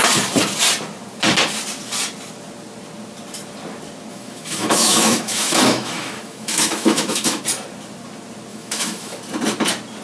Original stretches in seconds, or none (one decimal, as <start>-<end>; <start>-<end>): 0.0-4.1; 7.4-8.5; 9.2-10.0